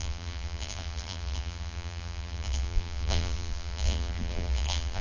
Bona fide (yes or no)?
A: no